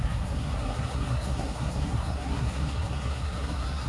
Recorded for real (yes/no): no